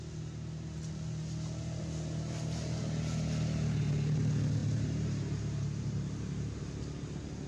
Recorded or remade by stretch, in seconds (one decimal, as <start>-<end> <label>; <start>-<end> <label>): 0.0-4.6 recorded; 4.6-6.6 remade; 6.6-7.5 recorded